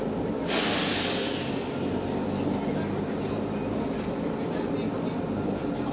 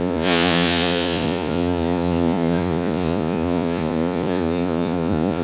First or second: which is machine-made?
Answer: second